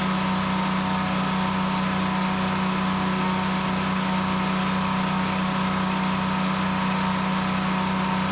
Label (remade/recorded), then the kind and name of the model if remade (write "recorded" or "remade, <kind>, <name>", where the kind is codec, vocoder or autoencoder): recorded